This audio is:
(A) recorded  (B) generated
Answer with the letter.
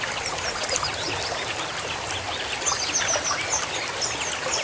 A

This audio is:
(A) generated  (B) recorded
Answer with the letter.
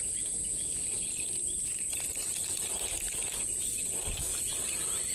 B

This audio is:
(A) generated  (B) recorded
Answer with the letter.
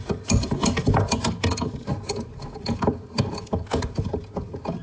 B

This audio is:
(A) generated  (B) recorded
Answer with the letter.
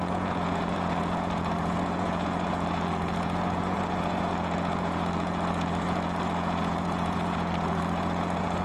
A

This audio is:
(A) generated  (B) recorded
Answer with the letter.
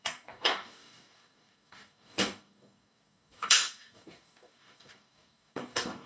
A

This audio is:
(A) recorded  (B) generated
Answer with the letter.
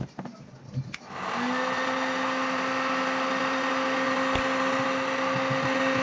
A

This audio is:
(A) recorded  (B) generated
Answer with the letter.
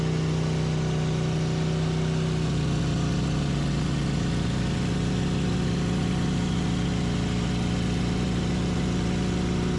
A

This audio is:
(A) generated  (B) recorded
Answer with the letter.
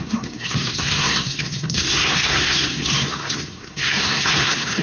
A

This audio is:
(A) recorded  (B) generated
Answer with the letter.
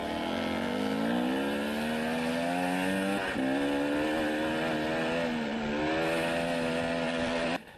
A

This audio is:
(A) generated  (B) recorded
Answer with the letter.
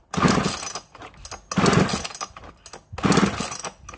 B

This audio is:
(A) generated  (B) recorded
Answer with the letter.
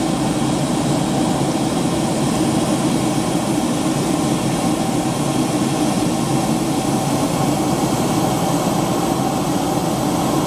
B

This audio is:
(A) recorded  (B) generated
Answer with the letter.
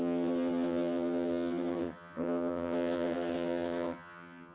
B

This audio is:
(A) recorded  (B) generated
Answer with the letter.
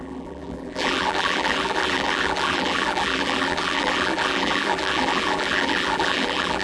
B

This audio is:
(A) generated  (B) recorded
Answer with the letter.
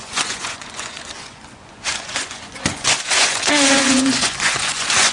A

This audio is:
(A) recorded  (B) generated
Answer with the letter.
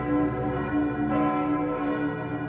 A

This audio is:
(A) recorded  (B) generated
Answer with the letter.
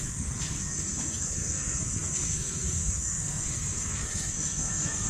B